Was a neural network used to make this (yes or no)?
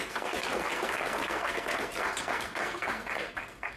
yes